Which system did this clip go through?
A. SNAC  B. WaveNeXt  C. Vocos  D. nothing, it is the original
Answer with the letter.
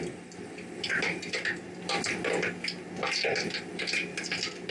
D